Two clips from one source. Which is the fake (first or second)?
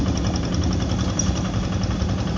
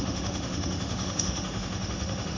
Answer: second